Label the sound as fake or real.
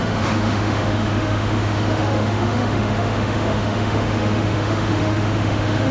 fake